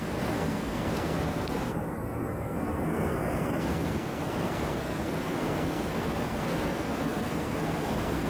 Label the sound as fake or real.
fake